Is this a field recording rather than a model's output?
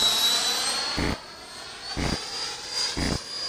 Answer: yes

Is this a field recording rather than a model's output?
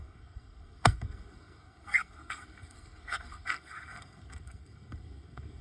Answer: no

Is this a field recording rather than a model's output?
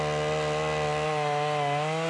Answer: yes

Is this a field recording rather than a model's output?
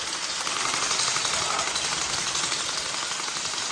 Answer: yes